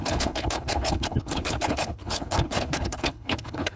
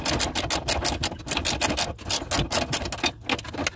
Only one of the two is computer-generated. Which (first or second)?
first